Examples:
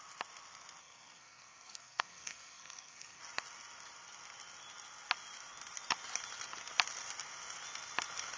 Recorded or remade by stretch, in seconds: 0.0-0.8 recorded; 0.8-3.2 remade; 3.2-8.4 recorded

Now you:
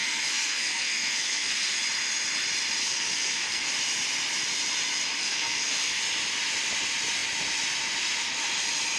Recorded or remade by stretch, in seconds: 0.0-1.8 remade; 1.8-2.8 recorded; 2.8-3.7 remade; 3.7-5.2 recorded; 5.2-6.0 remade; 6.0-9.0 recorded

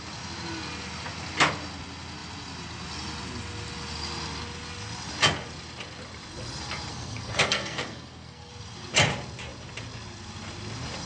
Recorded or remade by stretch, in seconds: 0.0-6.9 recorded; 6.9-8.5 remade; 8.5-11.1 recorded